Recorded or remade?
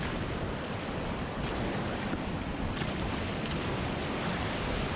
remade